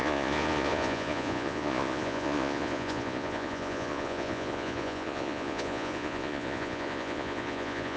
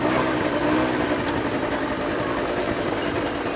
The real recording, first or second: second